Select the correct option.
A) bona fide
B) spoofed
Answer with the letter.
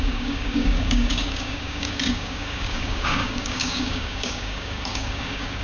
B